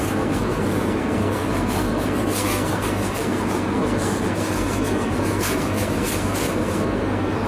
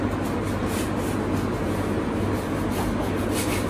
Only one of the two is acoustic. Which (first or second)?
second